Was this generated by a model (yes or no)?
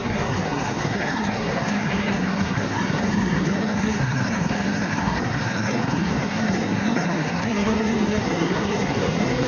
yes